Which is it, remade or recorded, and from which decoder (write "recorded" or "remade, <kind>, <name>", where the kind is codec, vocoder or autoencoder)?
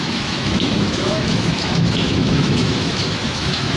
remade, autoencoder, DAC-VAE